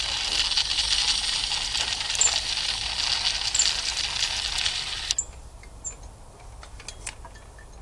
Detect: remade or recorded recorded